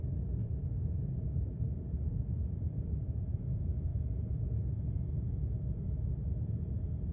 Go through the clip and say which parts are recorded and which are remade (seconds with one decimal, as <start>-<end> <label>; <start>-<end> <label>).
0.0-3.9 remade; 3.9-6.4 recorded; 6.4-7.1 remade